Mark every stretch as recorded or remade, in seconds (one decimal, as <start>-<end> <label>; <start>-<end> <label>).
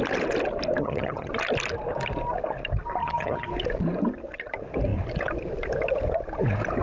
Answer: 0.0-0.8 recorded; 0.8-1.3 remade; 1.3-3.0 recorded; 3.0-3.5 remade; 3.5-6.8 recorded